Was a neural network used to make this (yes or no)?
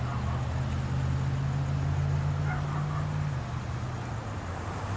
no